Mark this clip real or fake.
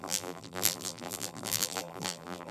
fake